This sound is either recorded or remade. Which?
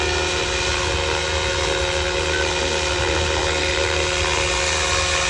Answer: recorded